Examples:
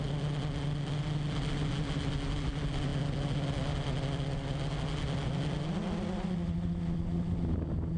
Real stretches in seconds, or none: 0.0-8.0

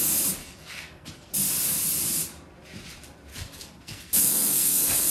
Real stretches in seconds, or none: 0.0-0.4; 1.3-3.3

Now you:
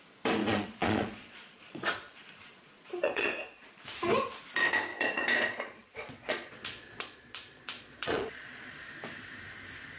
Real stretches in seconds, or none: 0.0-0.4; 3.7-4.9; 8.7-10.0